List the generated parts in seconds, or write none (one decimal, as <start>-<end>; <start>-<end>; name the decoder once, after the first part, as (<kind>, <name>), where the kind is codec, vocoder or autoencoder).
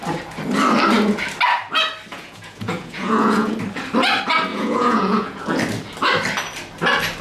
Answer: 2.1-3.5 (vocoder, Vocos); 4.5-5.4